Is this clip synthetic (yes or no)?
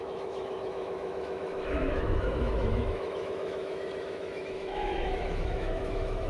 yes